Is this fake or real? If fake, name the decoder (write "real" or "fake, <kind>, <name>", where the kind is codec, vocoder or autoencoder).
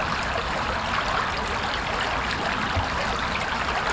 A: real